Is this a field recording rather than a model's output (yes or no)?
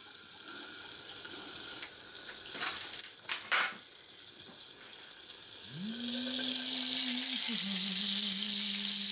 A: yes